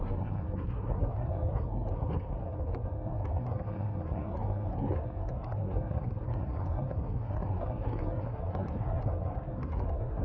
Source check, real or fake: fake